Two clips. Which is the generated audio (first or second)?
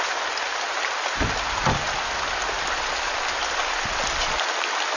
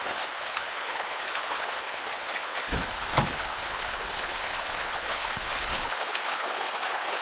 second